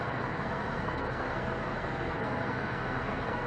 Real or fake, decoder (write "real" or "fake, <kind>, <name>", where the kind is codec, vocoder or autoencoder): fake, codec, SNAC